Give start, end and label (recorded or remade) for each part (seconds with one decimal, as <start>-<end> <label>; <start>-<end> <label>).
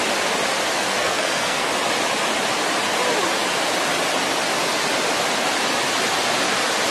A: 0.0-0.9 recorded; 0.9-1.7 remade; 1.7-6.9 recorded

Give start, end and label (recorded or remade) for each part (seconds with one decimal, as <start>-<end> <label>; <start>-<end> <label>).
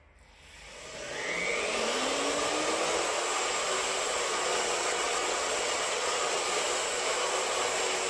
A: 0.0-4.5 recorded; 4.5-6.4 remade; 6.4-8.1 recorded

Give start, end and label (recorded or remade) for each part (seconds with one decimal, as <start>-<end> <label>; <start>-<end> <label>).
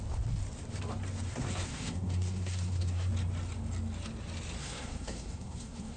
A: 0.0-1.3 recorded; 1.3-3.1 remade; 3.1-4.6 recorded; 4.6-6.0 remade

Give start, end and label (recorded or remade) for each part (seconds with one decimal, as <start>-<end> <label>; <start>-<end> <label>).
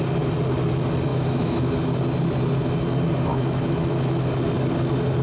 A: 0.0-1.1 recorded; 1.1-1.7 remade; 1.7-3.3 recorded; 3.3-4.3 remade; 4.3-5.2 recorded